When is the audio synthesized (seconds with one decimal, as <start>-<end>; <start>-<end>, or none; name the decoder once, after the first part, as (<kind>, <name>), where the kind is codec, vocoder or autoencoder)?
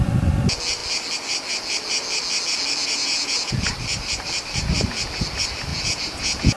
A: 2.8-3.7 (vocoder, Vocos); 5.7-6.6